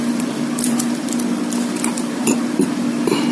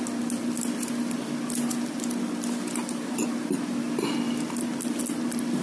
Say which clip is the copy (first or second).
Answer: first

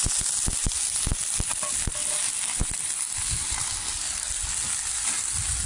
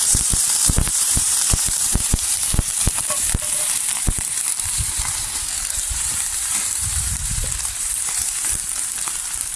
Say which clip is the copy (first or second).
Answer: second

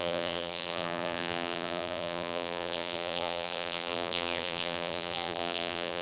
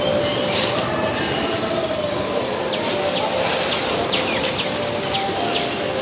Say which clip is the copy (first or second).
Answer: first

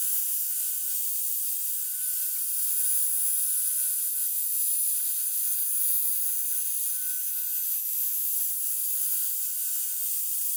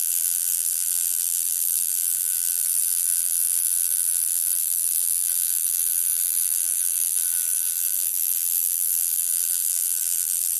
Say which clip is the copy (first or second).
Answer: second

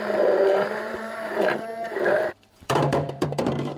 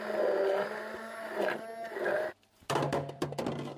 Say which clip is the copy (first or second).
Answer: first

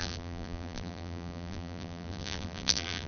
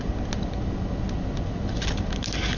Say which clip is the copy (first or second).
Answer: first